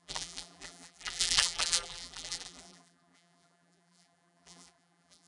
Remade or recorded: remade